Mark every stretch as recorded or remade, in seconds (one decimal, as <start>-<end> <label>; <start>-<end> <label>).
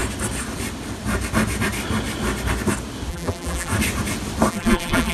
0.0-3.1 recorded; 3.1-3.7 remade; 3.7-4.5 recorded; 4.5-5.1 remade